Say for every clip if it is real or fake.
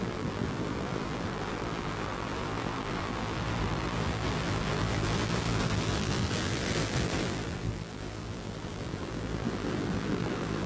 fake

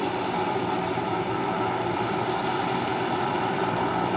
fake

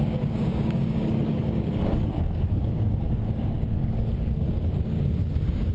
fake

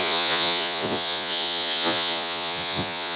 fake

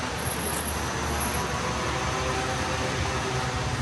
real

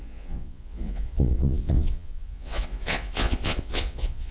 fake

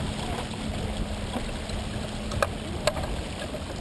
real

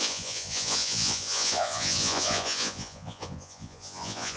fake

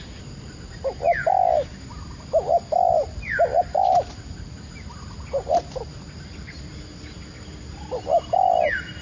real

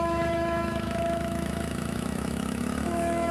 fake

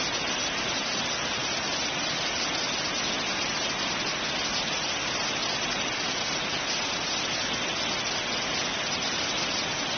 real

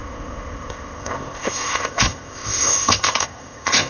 fake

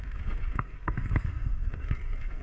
fake